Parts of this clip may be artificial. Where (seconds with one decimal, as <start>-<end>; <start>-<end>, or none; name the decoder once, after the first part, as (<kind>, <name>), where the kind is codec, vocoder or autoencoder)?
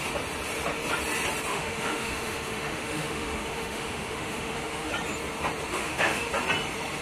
1.5-4.9 (autoencoder, DAC-VAE); 5.7-6.3